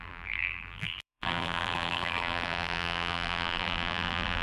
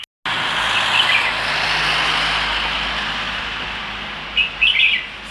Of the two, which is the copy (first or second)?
first